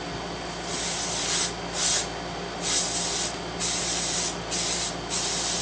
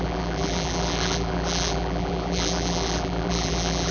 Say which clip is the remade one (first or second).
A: second